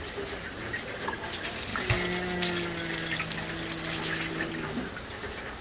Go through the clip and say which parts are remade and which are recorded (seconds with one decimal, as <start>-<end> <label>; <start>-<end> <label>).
0.0-1.7 remade; 1.7-5.0 recorded; 5.0-5.6 remade